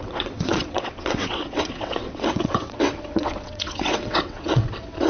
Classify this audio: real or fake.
fake